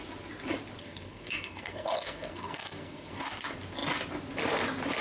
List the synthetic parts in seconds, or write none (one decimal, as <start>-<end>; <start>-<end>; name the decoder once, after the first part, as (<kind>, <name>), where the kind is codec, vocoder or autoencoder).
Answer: 0.8-3.2 (codec, SNAC)